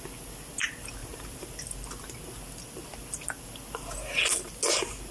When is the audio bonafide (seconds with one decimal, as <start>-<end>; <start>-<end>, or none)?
0.0-1.0; 1.6-5.1